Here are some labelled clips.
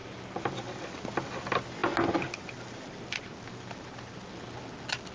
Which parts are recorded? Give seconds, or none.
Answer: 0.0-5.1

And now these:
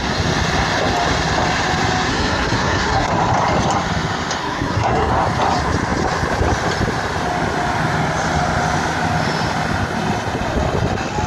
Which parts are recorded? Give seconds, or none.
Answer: 0.0-2.1; 3.1-4.4; 5.1-11.3

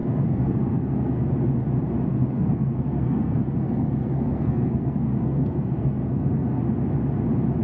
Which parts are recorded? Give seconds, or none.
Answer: 1.2-2.1; 6.6-7.6

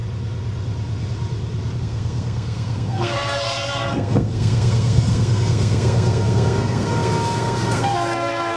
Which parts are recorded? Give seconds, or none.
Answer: 0.0-1.8

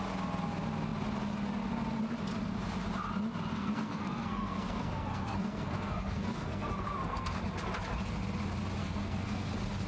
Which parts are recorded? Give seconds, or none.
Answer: 0.0-3.5; 7.4-8.8; 9.5-9.9